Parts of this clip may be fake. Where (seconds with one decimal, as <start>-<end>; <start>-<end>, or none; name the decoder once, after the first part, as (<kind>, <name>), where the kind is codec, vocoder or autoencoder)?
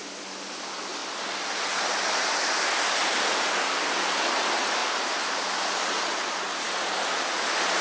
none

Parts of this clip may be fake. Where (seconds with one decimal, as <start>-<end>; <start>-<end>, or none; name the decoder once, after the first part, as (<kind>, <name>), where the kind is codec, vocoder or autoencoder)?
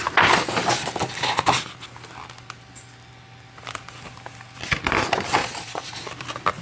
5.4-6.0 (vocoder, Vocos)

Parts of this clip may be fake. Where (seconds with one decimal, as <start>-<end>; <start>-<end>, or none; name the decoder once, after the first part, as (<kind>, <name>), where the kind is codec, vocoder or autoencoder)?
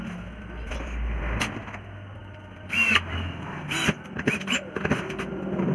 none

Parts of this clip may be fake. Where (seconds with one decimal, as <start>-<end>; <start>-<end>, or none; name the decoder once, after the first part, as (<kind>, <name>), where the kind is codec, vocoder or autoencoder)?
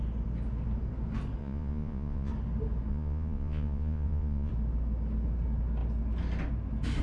1.4-2.3 (vocoder, Vocos); 2.9-4.5